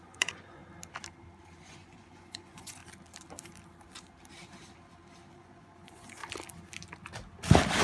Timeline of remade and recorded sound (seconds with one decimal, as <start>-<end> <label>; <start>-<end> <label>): 0.0-0.6 remade; 0.6-1.6 recorded; 1.6-2.8 remade; 2.8-5.3 recorded; 5.3-6.2 remade; 6.2-7.8 recorded